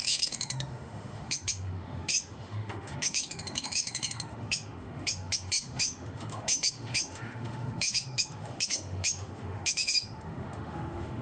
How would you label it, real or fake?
fake